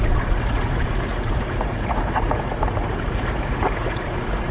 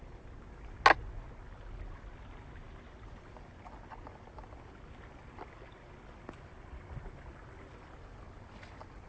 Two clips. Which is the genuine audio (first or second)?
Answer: second